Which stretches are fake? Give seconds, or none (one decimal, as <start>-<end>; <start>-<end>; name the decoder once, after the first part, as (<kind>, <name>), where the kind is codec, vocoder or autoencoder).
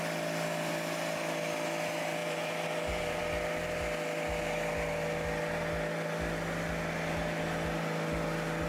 2.2-3.2 (vocoder, BigVGAN v2)